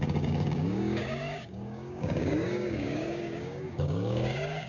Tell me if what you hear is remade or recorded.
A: remade